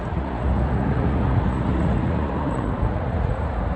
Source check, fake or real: fake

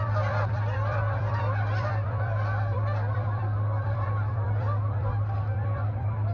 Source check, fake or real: fake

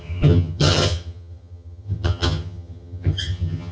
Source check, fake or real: fake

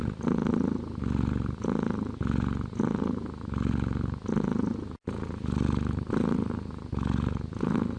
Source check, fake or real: real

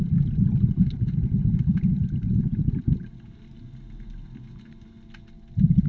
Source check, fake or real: real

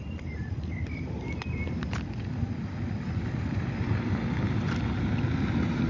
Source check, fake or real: fake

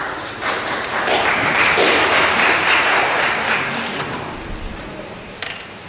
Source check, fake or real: fake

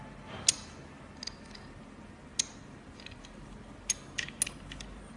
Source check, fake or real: real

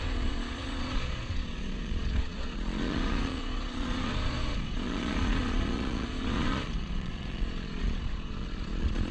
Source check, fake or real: fake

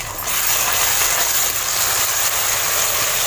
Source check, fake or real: real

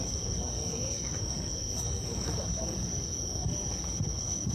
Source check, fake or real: fake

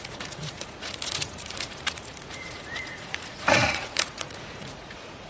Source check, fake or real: fake